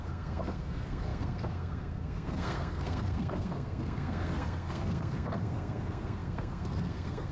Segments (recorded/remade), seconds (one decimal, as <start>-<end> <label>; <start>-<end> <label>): 0.0-7.3 remade

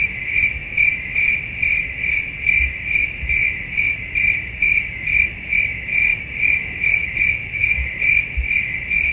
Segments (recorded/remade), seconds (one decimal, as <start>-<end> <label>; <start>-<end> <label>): 0.0-9.1 recorded

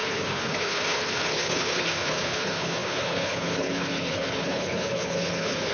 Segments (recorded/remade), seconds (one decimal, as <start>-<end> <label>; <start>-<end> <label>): 0.0-5.7 remade

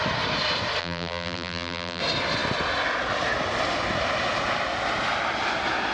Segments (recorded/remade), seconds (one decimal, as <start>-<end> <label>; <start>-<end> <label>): 0.0-0.8 recorded; 0.8-2.0 remade; 2.0-5.9 recorded

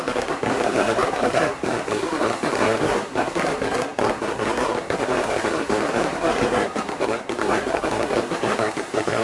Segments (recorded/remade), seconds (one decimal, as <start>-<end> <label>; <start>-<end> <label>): 0.0-9.2 remade

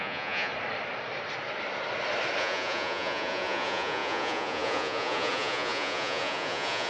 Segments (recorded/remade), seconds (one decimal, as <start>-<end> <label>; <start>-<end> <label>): 0.0-0.5 remade; 0.5-2.4 recorded; 2.4-6.9 remade

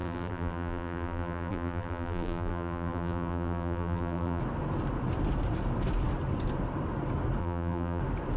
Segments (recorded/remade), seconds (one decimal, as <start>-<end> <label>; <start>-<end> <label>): 0.0-4.4 remade; 4.4-7.4 recorded; 7.4-8.0 remade; 8.0-8.4 recorded

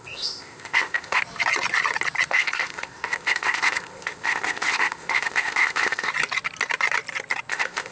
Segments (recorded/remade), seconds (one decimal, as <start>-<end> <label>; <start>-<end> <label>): 0.0-1.2 remade; 1.2-2.3 recorded; 2.3-6.1 remade; 6.1-7.5 recorded; 7.5-7.9 remade